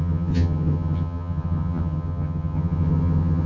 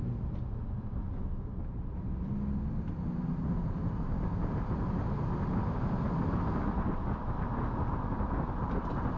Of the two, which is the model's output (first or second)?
first